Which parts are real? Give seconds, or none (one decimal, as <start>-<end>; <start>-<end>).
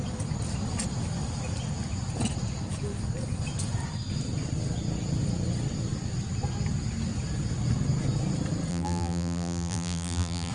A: 0.0-8.7